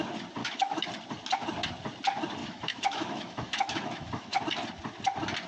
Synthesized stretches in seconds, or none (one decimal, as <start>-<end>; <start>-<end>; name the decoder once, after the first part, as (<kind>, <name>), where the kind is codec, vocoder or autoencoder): 0.4-0.9 (autoencoder, DAC-VAE); 2.4-4.4